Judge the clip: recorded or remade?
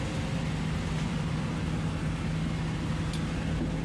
recorded